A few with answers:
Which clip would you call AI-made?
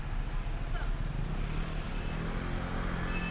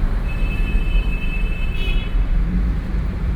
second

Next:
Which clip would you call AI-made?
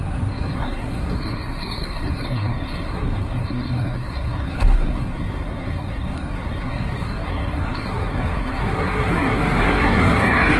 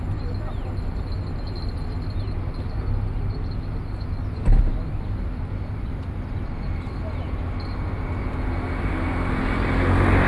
first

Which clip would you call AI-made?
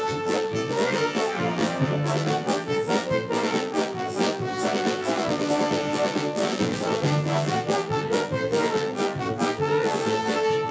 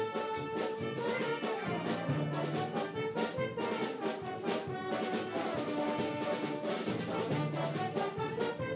first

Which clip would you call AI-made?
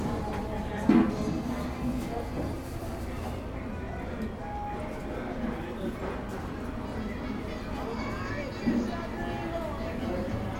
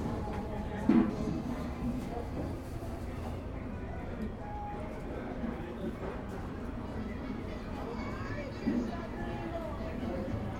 second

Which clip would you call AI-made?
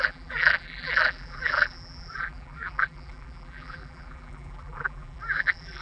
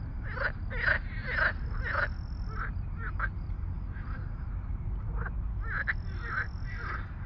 first